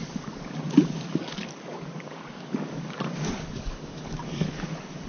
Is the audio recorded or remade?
remade